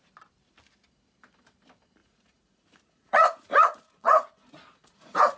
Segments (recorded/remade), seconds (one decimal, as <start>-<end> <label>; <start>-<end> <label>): 0.0-2.0 recorded; 2.0-5.4 remade